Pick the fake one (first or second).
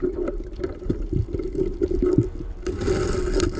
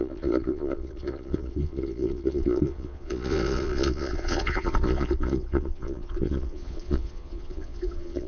second